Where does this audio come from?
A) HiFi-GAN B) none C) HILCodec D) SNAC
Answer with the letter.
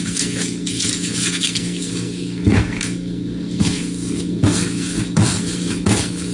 D